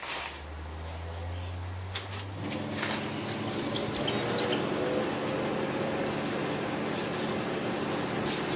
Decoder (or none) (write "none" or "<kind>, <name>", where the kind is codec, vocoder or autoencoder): none